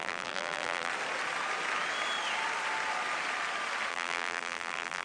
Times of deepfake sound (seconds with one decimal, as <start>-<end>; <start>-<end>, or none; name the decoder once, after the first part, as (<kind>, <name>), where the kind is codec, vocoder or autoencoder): 0.0-0.9 (vocoder, BigVGAN v2); 3.9-5.0